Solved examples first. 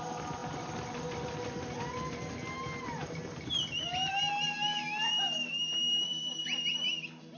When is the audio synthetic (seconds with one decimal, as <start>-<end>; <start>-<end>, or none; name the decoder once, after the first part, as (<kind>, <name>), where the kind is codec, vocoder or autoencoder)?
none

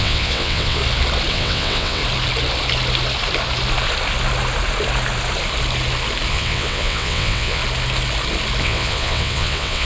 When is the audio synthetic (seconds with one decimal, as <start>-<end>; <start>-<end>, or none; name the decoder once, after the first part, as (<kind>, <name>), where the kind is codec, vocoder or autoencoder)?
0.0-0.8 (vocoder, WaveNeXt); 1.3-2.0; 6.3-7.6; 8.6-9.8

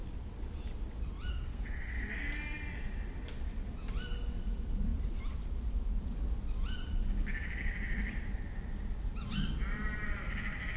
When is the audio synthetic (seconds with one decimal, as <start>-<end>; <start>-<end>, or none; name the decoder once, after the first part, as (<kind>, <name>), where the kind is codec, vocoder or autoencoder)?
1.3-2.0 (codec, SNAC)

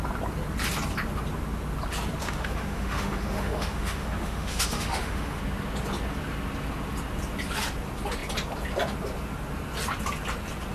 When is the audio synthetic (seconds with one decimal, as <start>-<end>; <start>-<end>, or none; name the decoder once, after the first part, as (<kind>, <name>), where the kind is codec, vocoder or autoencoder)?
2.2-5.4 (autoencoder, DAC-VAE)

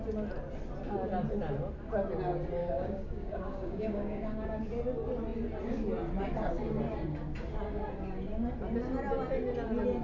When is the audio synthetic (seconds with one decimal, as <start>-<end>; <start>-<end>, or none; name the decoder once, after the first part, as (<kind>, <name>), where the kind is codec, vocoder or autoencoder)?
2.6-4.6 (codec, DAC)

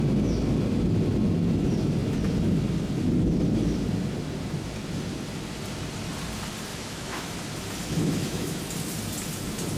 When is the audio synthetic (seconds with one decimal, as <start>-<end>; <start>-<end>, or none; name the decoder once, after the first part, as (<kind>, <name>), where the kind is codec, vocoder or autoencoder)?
6.7-7.3 (autoencoder, DAC-VAE); 8.0-8.6

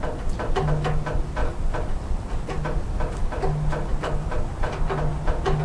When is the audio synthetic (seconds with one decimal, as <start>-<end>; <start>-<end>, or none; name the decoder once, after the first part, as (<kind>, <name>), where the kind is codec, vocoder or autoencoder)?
1.4-2.6 (vocoder, BigVGAN v2); 3.9-4.7